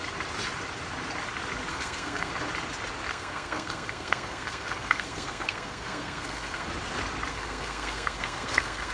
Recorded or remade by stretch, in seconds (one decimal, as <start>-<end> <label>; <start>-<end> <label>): 0.0-1.7 recorded; 1.7-2.3 remade; 2.3-3.1 recorded; 3.1-6.7 remade; 6.7-7.3 recorded; 7.3-8.9 remade